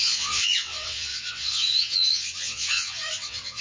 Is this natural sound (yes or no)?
no